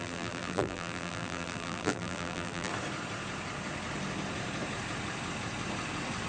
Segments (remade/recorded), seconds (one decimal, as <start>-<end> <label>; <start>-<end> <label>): 0.0-2.7 remade; 2.7-6.3 recorded